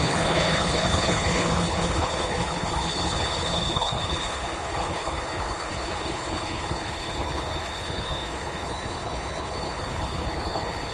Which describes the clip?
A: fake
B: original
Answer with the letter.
A